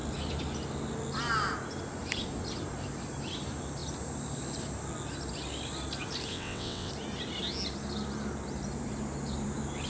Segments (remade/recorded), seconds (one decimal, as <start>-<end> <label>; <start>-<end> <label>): 0.0-6.3 recorded; 6.3-6.9 remade; 6.9-9.9 recorded